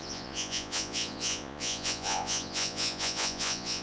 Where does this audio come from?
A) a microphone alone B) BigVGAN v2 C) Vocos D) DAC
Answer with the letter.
C